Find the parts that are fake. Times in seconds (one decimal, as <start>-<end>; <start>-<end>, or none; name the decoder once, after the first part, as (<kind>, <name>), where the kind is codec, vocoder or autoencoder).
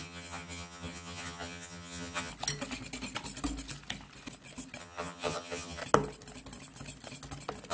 0.0-2.3 (vocoder, HiFi-GAN); 4.8-5.8